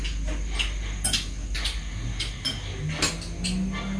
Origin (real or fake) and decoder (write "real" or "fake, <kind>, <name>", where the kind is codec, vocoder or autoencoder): real